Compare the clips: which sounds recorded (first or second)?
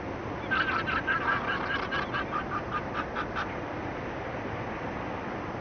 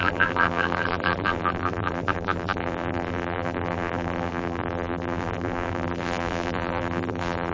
first